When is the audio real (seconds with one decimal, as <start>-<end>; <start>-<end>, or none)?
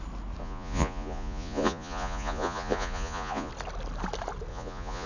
0.0-0.4; 3.5-4.5